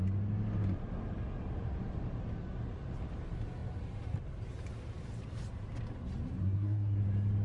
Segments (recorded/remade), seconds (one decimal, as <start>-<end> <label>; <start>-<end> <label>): 0.0-6.4 recorded; 6.4-7.0 remade; 7.0-7.4 recorded